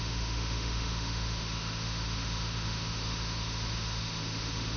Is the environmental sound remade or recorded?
remade